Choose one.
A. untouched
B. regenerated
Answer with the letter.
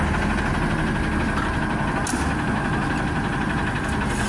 A